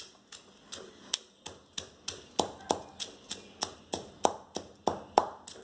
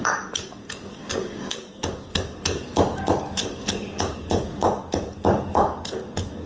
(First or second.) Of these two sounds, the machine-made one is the second